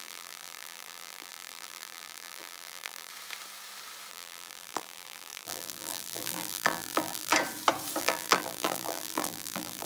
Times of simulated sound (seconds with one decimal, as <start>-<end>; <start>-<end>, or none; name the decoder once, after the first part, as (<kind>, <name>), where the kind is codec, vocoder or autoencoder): 0.0-3.1 (vocoder, BigVGAN v2); 4.1-7.3; 8.0-9.9